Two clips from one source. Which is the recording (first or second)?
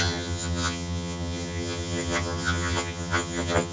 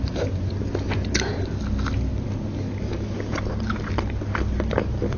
second